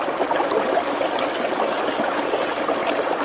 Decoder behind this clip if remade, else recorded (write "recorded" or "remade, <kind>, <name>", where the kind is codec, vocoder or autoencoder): recorded